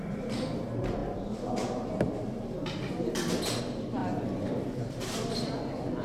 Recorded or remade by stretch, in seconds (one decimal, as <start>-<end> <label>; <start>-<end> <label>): 0.0-1.0 remade; 1.0-3.6 recorded; 3.6-4.0 remade; 4.0-4.5 recorded; 4.5-6.0 remade